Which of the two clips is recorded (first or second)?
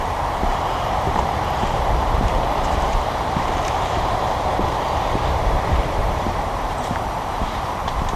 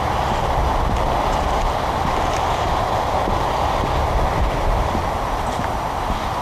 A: second